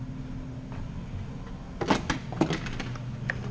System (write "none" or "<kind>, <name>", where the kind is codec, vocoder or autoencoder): none